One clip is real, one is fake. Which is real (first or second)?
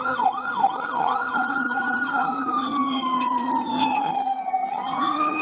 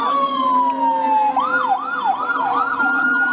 second